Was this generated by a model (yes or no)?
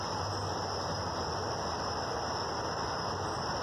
no